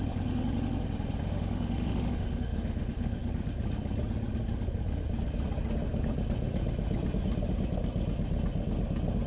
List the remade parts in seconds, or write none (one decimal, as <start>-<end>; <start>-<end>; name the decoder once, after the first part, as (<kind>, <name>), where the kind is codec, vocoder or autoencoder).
1.2-3.3 (autoencoder, DAC-VAE)